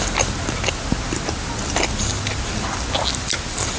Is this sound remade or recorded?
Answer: recorded